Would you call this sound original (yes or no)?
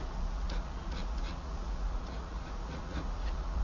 no